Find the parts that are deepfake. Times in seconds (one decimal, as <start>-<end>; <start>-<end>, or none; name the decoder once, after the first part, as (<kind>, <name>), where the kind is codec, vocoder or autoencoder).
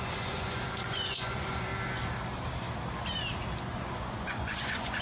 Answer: 0.0-1.7 (vocoder, Vocos); 3.6-5.0